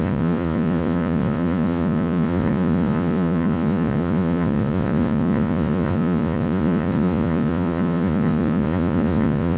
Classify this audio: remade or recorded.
remade